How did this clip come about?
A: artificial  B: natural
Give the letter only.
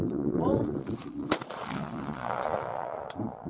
A